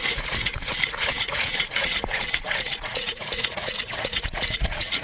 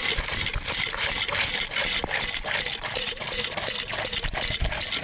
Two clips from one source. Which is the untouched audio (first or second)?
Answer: second